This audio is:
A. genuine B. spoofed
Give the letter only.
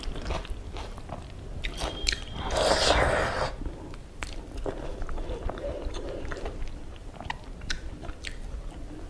A